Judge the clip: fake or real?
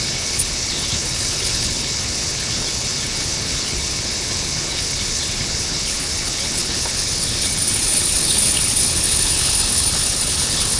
fake